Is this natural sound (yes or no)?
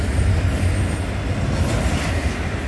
yes